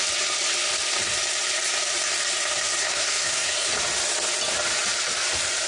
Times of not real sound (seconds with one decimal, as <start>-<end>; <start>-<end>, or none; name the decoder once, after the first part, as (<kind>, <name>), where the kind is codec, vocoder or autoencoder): 2.8-3.7 (codec, SNAC)